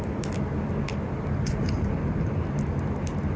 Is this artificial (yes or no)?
no